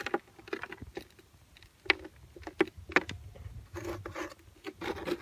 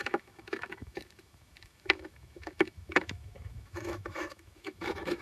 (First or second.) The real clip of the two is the first